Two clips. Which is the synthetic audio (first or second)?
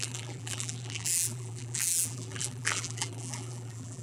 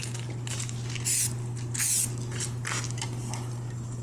first